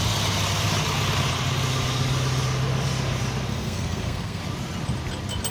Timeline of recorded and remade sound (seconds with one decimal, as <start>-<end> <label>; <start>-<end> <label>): 0.0-3.5 recorded; 3.5-4.4 remade; 4.4-5.5 recorded